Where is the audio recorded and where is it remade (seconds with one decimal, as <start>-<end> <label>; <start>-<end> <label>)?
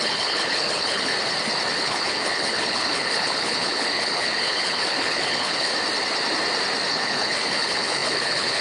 0.0-1.1 remade; 1.1-1.8 recorded; 1.8-5.7 remade; 5.7-6.9 recorded; 6.9-8.6 remade